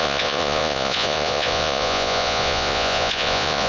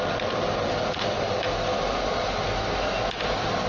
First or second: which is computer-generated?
first